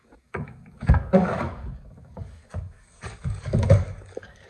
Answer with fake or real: fake